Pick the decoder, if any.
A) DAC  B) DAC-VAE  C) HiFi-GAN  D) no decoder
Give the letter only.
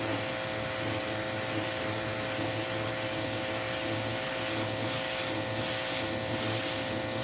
D